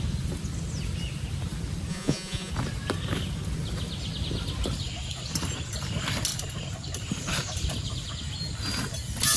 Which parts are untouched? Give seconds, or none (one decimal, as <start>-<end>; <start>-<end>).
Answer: 0.0-1.9; 2.5-9.4